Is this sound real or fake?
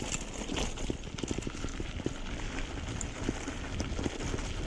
real